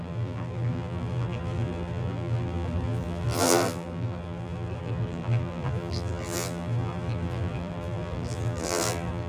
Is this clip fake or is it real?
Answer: fake